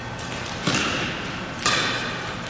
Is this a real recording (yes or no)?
yes